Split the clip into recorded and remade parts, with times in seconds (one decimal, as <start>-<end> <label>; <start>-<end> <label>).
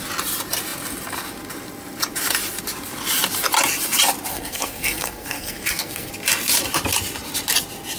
0.0-4.3 recorded; 4.3-6.1 remade; 6.1-8.0 recorded